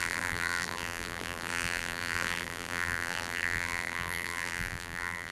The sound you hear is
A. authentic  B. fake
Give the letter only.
B